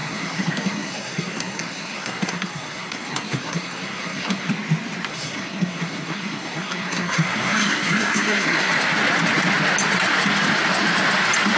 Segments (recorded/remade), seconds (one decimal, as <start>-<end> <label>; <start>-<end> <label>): 0.0-4.5 remade; 4.5-5.1 recorded; 5.1-8.7 remade; 8.7-11.6 recorded